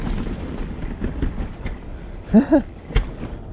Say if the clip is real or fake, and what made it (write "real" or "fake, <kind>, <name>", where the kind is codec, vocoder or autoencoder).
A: fake, vocoder, BigVGAN v2